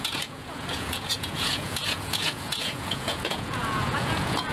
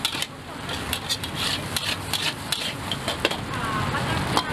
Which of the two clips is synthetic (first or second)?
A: first